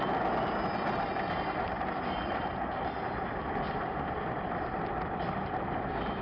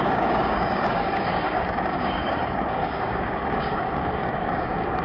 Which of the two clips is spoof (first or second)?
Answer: second